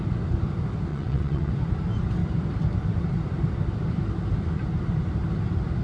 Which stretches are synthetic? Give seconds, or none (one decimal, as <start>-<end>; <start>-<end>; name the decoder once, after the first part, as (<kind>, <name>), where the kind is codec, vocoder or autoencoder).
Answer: 0.9-1.5 (vocoder, WaveNeXt)